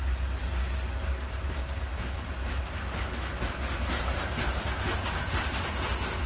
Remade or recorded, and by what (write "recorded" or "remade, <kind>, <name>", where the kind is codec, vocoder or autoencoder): recorded